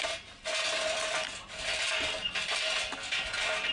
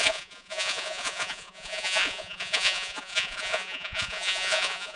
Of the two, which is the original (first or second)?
first